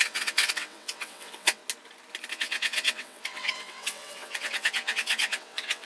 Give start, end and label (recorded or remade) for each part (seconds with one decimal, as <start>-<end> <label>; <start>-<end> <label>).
0.0-1.6 remade; 1.6-2.3 recorded; 2.3-5.9 remade